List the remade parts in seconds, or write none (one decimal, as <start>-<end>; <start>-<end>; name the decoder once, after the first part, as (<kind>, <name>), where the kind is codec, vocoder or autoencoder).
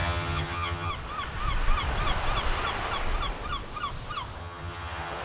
0.0-0.9 (vocoder, HiFi-GAN); 4.4-5.2